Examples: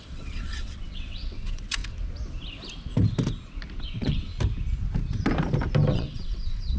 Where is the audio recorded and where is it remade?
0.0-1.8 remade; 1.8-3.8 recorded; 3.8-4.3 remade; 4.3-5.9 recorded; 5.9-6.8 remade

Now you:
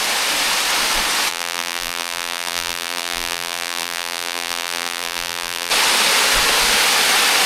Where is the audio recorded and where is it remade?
0.0-1.3 recorded; 1.3-5.7 remade; 5.7-7.5 recorded

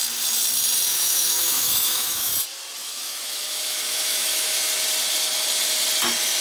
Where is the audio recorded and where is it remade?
0.0-0.9 recorded; 0.9-2.3 remade; 2.3-2.8 recorded; 2.8-4.7 remade; 4.7-6.4 recorded

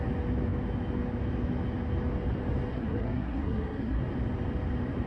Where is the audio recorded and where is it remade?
0.0-2.7 recorded; 2.7-4.0 remade; 4.0-5.1 recorded

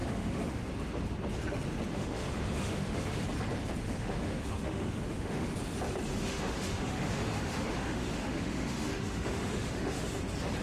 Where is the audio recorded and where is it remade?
0.0-0.7 remade; 0.7-1.9 recorded; 1.9-3.2 remade; 3.2-3.8 recorded; 3.8-5.5 remade; 5.5-6.1 recorded; 6.1-10.2 remade; 10.2-10.6 recorded

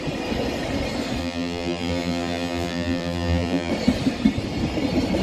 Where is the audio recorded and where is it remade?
0.0-1.2 recorded; 1.2-3.7 remade; 3.7-5.2 recorded

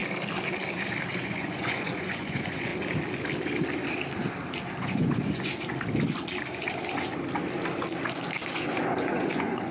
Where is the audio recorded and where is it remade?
0.0-1.1 recorded; 1.1-2.7 remade; 2.7-4.8 recorded; 4.8-5.5 remade; 5.5-8.5 recorded; 8.5-9.7 remade